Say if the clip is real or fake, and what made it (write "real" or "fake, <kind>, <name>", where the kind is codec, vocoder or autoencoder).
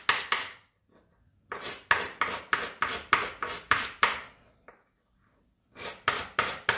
real